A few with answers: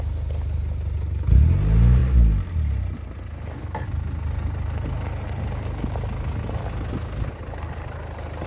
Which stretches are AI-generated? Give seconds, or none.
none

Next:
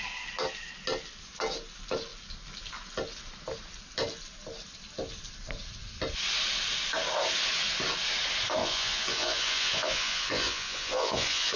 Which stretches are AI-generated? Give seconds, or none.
8.6-11.6 (vocoder, Vocos)

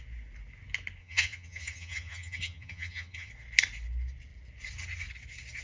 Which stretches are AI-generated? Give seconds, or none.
1.0-3.3 (vocoder, HiFi-GAN)

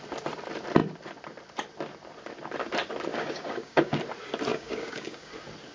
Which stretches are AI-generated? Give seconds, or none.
3.1-4.0 (codec, DAC); 4.5-5.3

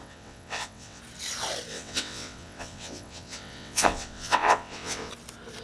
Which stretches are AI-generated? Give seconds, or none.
0.0-1.0 (vocoder, WaveNeXt); 1.7-5.1

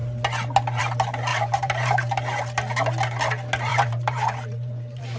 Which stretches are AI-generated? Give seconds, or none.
1.3-2.4 (vocoder, BigVGAN v2); 3.7-5.2

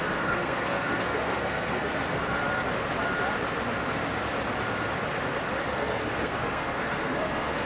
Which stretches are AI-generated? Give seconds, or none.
0.0-2.4 (codec, SNAC); 5.7-7.7

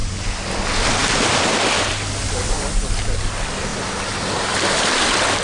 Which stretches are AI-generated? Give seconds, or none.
none